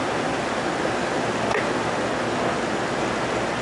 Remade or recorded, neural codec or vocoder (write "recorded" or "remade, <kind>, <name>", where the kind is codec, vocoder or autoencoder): recorded